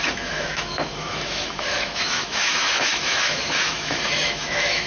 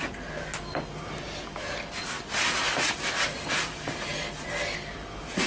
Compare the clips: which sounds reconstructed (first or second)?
first